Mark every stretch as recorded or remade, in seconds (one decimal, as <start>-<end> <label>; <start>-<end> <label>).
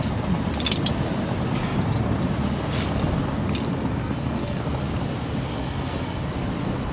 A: 0.0-4.0 recorded; 4.0-4.6 remade; 4.6-5.5 recorded; 5.5-6.2 remade; 6.2-6.9 recorded